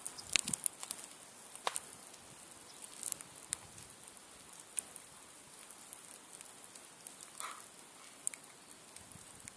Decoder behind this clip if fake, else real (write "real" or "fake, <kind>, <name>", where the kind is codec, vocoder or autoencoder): real